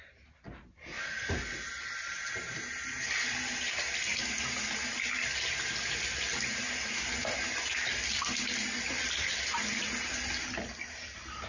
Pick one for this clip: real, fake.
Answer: real